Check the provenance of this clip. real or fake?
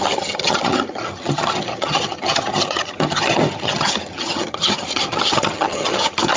fake